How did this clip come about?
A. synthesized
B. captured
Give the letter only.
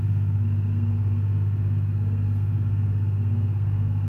A